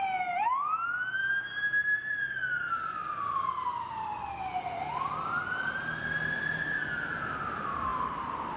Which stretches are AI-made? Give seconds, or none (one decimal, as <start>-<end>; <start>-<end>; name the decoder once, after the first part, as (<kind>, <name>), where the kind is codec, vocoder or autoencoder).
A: 1.2-2.7 (vocoder, BigVGAN v2)